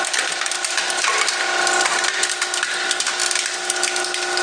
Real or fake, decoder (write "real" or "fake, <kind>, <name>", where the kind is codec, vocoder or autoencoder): real